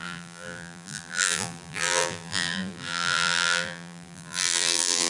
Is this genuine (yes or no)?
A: no